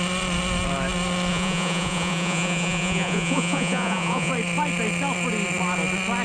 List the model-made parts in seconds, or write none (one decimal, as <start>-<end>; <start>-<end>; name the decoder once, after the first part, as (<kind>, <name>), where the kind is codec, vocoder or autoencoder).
1.3-4.3 (vocoder, Vocos)